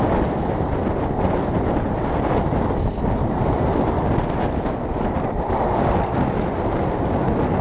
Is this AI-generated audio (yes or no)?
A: no